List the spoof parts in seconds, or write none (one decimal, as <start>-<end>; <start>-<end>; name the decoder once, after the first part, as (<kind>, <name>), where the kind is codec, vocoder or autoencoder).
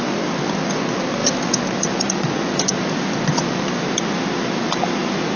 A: none